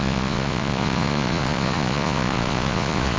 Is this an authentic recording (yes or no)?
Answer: no